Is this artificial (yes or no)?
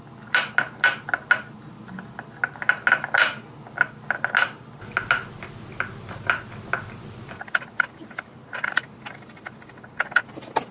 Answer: no